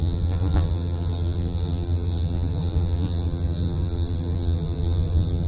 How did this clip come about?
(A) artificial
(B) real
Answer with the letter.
A